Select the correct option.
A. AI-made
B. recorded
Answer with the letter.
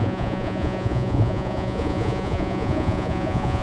A